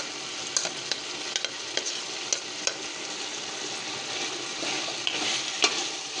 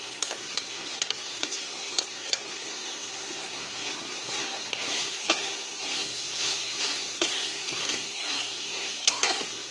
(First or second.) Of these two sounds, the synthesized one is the second